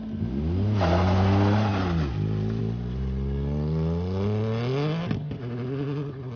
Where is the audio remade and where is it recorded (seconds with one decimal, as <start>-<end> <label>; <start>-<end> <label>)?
0.0-6.4 recorded